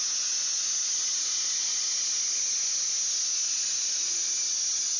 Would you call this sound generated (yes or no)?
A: no